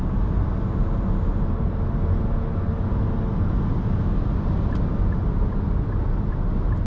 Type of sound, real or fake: real